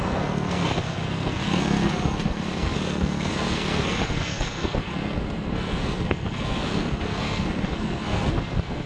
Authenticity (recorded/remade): remade